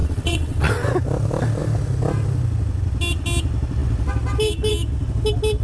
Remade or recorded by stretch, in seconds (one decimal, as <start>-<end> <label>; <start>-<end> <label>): 0.0-0.7 remade; 0.7-5.6 recorded